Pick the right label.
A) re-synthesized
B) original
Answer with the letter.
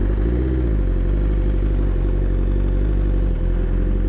B